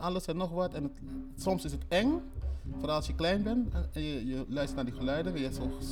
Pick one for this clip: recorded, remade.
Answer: recorded